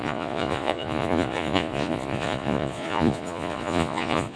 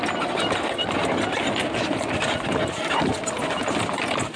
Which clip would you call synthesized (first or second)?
first